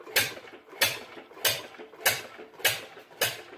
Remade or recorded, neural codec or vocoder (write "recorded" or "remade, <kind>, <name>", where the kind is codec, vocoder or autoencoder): recorded